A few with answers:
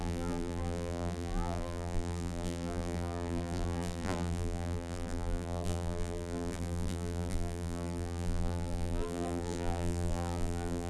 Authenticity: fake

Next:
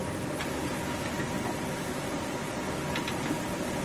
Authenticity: real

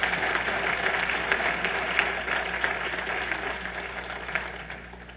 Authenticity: real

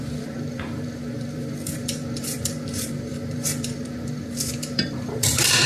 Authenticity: fake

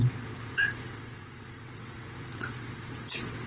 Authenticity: fake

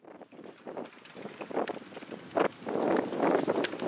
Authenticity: real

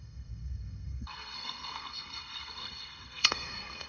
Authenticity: fake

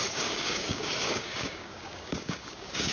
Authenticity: fake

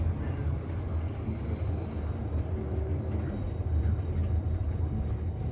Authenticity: real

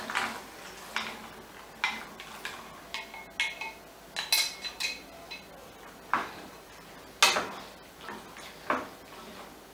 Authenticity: real